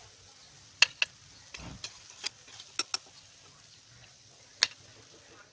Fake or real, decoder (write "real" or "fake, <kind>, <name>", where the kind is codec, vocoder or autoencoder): real